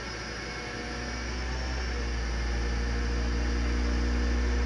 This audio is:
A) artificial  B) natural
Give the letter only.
B